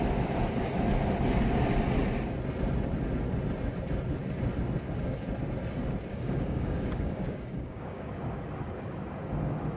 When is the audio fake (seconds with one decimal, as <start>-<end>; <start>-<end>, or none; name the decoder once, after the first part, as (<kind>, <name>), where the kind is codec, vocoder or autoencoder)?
6.1-8.1 (codec, DAC)